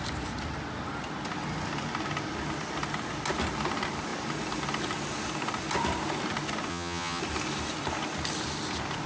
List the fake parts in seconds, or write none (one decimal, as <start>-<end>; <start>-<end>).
6.7-7.2